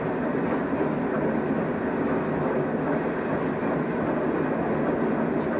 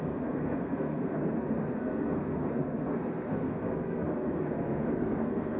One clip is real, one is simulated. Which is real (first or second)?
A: first